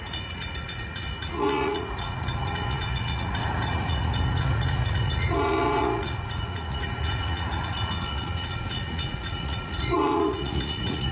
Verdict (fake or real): fake